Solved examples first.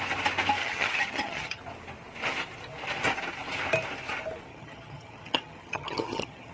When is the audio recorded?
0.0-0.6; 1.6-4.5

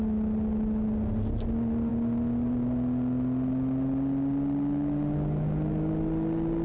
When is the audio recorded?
0.0-6.6

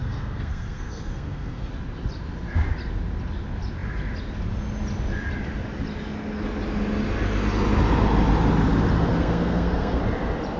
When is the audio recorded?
1.7-9.1; 10.0-10.6

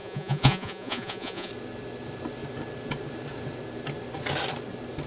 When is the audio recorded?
1.5-5.1